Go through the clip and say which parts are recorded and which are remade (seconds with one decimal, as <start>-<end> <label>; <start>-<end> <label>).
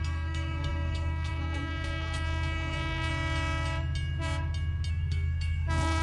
0.0-3.1 remade; 3.1-4.9 recorded; 4.9-6.0 remade